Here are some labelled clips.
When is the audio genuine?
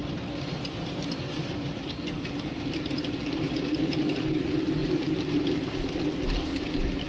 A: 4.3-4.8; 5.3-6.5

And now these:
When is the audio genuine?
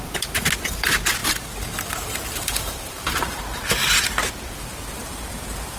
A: 0.0-1.2; 3.4-5.8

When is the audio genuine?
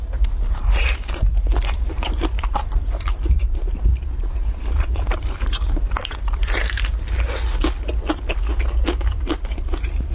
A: 6.9-9.2